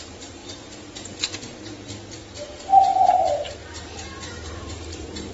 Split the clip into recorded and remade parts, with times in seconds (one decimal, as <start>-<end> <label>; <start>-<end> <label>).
0.0-0.4 remade; 0.4-3.1 recorded; 3.1-5.3 remade